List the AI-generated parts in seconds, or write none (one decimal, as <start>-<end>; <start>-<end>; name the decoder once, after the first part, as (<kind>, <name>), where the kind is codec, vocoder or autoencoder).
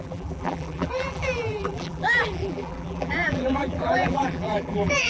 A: 0.0-5.1 (vocoder, BigVGAN v2)